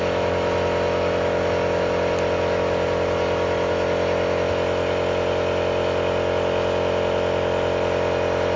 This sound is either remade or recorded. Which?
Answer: recorded